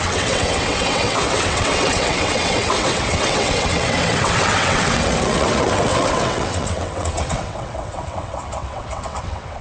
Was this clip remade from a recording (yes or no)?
yes